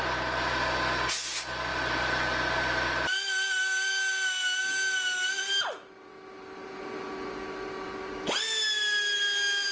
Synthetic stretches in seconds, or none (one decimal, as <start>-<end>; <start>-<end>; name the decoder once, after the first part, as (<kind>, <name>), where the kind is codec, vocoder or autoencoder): none